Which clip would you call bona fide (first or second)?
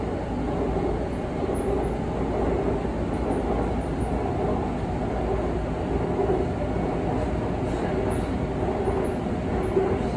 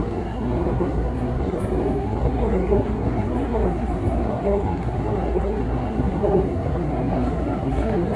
first